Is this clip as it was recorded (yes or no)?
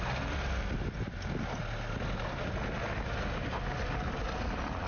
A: yes